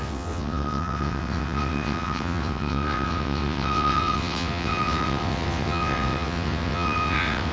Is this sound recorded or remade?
remade